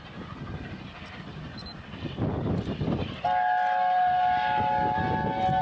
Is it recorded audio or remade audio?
recorded